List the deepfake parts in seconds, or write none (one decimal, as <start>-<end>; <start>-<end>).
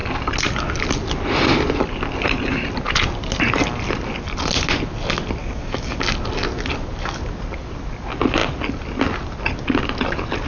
5.4-6.0